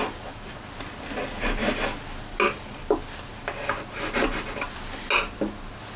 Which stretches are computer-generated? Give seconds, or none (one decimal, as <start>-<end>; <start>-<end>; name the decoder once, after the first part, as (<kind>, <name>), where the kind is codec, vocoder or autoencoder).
none